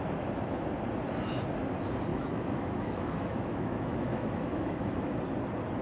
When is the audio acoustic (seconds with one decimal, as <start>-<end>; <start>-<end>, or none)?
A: 0.0-2.1; 5.1-5.8